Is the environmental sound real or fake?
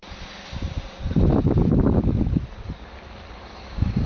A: fake